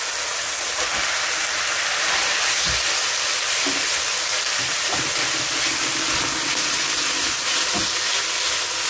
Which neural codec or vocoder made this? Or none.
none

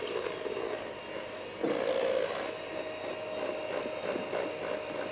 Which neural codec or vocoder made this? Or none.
none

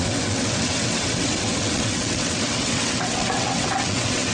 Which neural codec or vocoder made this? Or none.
vocoder, WaveNeXt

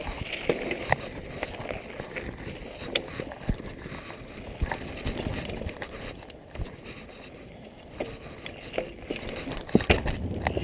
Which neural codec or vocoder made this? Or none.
none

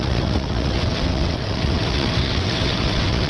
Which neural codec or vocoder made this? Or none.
vocoder, WaveNeXt